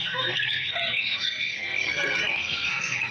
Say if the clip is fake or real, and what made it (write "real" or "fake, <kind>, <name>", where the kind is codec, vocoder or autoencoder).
fake, codec, SNAC